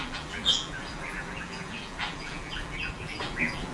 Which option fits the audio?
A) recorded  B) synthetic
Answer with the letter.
B